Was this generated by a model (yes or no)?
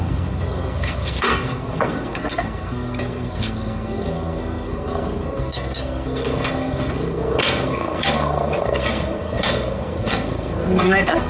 yes